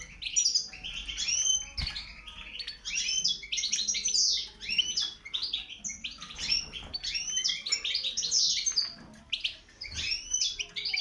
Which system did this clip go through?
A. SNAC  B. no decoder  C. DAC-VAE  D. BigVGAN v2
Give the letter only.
B